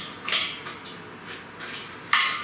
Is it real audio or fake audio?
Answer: fake